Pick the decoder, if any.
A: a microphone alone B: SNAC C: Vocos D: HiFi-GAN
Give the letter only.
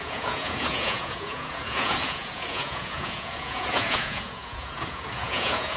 C